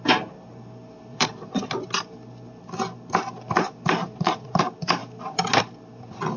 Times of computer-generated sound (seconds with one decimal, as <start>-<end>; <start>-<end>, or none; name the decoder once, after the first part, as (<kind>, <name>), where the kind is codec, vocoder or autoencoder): 1.1-1.6 (vocoder, Vocos); 4.0-4.6